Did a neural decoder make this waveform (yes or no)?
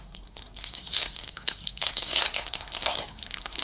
yes